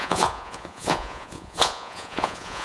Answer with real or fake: fake